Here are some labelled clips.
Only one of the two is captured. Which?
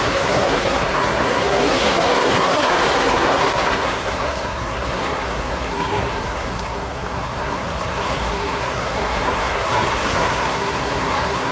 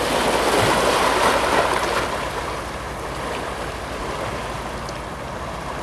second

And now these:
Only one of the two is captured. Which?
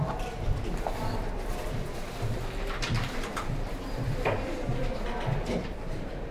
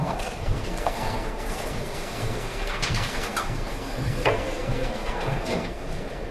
first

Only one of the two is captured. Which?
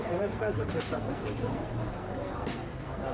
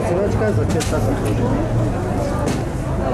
second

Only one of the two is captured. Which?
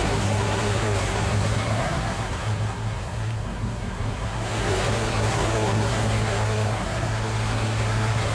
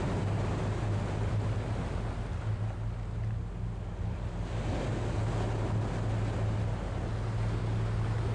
second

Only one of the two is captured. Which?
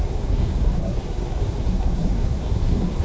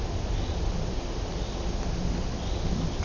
second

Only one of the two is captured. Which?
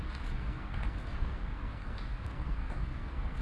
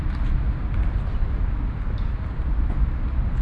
second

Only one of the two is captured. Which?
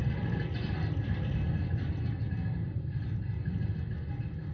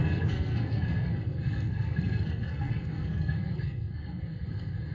first